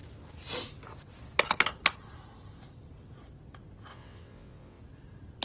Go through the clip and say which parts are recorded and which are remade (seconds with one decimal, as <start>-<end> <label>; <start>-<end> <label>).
0.0-3.9 recorded; 3.9-4.8 remade; 4.8-5.4 recorded